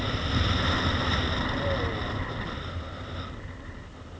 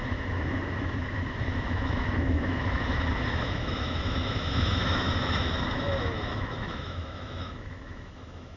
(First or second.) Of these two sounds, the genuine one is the first